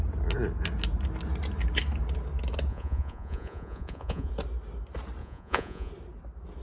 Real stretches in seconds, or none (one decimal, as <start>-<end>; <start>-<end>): 0.0-2.7; 4.3-5.2; 5.9-6.6